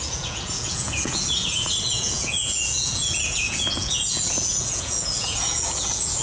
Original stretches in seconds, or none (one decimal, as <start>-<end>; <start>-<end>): none